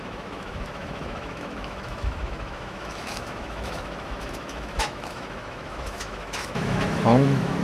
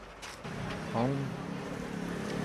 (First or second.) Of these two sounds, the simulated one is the first